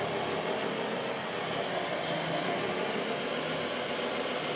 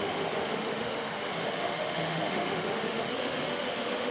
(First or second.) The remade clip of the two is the second